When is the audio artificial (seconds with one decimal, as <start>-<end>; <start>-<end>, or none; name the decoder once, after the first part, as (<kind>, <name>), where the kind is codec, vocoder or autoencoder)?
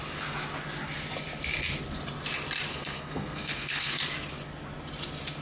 2.7-4.0 (codec, SNAC)